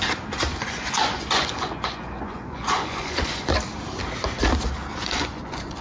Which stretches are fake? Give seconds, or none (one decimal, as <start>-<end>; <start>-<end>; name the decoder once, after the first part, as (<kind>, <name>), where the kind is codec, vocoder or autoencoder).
0.5-3.5 (vocoder, Vocos); 5.0-5.8